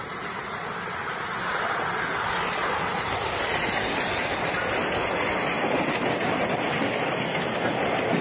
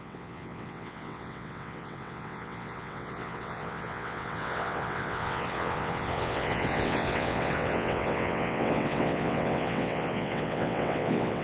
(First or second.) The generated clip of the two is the second